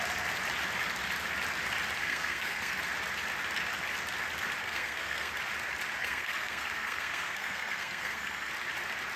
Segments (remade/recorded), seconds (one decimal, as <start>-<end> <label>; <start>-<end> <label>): 0.0-2.0 recorded; 2.0-2.8 remade; 2.8-4.6 recorded; 4.6-5.3 remade; 5.3-6.0 recorded; 6.0-8.5 remade; 8.5-9.2 recorded